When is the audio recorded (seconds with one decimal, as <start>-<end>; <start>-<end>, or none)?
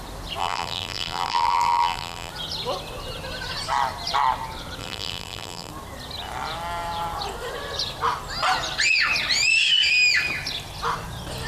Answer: 0.0-0.4; 2.3-4.8; 5.7-11.5